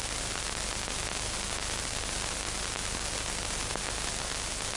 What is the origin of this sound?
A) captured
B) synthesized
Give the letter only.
A